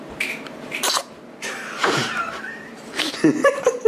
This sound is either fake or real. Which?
fake